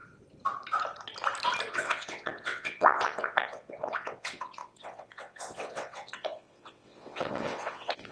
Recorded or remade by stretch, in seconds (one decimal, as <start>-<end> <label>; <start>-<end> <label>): 0.0-1.7 recorded; 1.7-8.1 remade